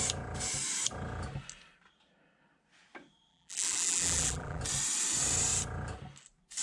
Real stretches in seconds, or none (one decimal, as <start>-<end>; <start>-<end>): 0.0-3.3; 4.6-6.6